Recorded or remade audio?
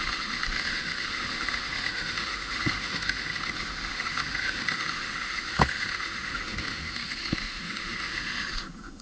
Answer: remade